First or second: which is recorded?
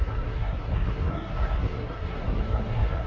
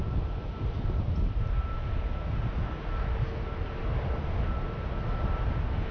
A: second